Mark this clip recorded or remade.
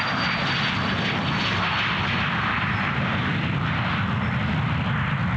recorded